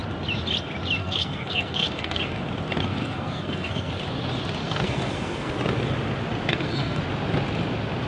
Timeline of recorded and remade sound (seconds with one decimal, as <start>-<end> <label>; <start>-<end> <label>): 0.0-1.0 recorded; 1.0-2.4 remade; 2.4-2.9 recorded; 2.9-3.9 remade; 3.9-4.6 recorded; 4.6-5.5 remade; 5.5-6.5 recorded; 6.5-7.0 remade; 7.0-8.1 recorded